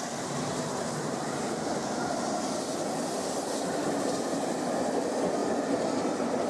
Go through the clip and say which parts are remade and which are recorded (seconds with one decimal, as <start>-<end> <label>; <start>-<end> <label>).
0.0-6.5 recorded

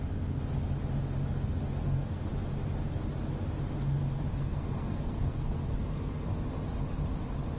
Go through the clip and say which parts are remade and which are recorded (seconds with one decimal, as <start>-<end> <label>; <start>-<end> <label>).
0.0-1.8 recorded; 1.8-2.3 remade; 2.3-4.3 recorded; 4.3-6.3 remade; 6.3-7.6 recorded

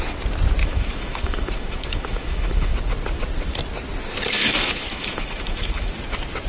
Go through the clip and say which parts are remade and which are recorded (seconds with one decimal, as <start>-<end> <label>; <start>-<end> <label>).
0.0-0.6 recorded; 0.6-2.7 remade; 2.7-4.4 recorded; 4.4-5.9 remade; 5.9-6.5 recorded

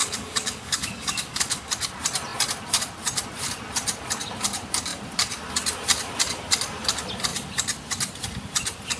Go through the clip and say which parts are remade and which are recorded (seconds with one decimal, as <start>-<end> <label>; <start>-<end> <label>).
0.0-1.7 remade; 1.7-9.0 recorded

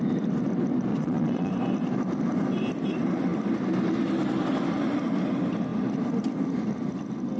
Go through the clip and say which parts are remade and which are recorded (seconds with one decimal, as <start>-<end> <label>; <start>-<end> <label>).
0.0-0.9 recorded; 0.9-1.5 remade; 1.5-7.4 recorded